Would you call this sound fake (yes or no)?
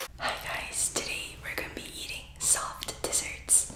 no